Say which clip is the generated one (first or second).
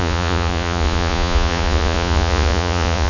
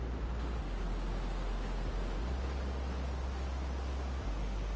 first